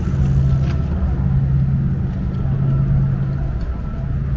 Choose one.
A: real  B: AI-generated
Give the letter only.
A